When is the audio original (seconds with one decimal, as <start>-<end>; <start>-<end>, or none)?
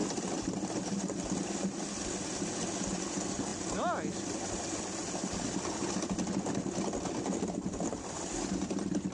0.0-9.1